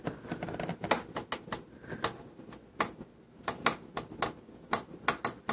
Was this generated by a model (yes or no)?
no